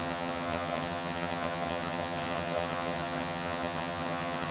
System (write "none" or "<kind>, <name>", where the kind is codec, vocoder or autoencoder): vocoder, HiFi-GAN